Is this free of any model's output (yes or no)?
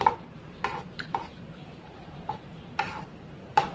no